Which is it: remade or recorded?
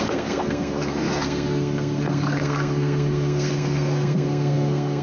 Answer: remade